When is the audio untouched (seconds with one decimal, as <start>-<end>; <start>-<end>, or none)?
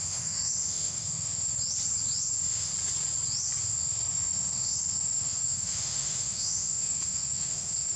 1.5-2.3; 2.7-3.6